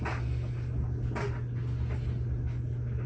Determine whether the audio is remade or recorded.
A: recorded